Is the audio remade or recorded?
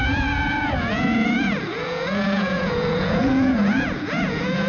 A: remade